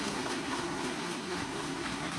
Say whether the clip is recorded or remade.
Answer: remade